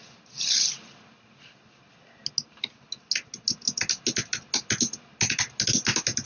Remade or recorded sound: recorded